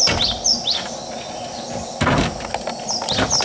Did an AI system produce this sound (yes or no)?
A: no